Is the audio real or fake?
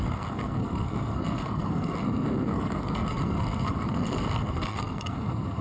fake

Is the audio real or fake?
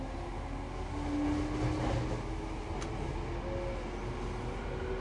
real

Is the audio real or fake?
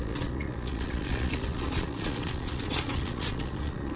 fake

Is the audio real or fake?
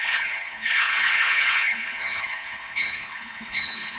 fake